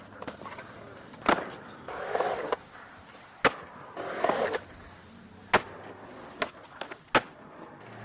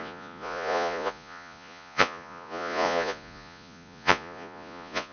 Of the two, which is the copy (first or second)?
second